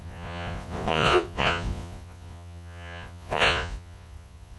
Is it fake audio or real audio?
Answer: fake